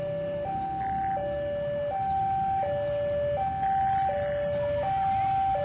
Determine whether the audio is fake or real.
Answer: real